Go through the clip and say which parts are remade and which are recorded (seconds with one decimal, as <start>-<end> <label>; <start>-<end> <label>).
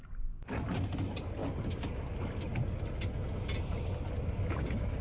0.0-5.0 recorded